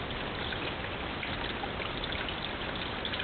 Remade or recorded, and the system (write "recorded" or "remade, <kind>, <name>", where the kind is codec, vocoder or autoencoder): recorded